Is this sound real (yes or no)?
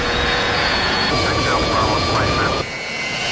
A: no